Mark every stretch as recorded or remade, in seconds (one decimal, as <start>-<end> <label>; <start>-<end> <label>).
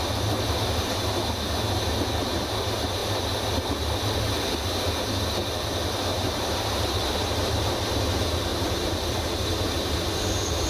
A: 0.0-6.1 recorded; 6.1-7.7 remade; 7.7-8.5 recorded; 8.5-10.1 remade; 10.1-10.7 recorded